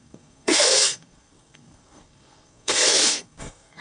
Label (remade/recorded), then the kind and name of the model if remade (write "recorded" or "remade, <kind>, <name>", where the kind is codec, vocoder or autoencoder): remade, codec, SNAC